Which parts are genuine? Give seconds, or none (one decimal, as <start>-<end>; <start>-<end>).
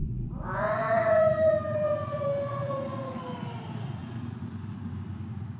3.2-4.0; 4.8-5.6